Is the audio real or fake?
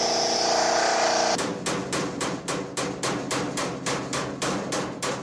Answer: real